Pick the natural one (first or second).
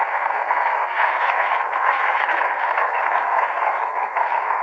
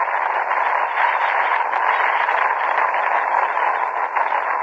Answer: second